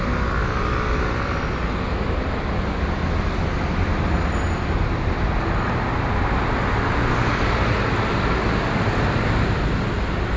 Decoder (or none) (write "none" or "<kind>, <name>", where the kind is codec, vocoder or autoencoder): none